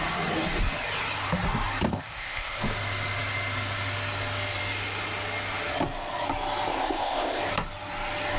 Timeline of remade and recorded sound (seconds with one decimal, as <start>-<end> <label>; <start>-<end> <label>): 0.0-1.9 recorded; 1.9-2.6 remade; 2.6-6.7 recorded; 6.7-7.4 remade; 7.4-8.4 recorded